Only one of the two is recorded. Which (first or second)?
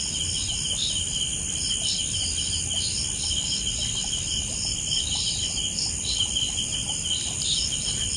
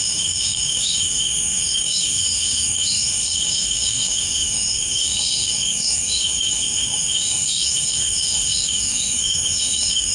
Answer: first